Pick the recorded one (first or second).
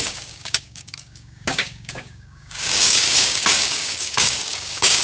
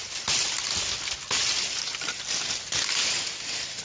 second